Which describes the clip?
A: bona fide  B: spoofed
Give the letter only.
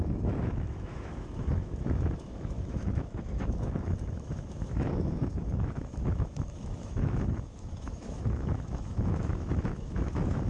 B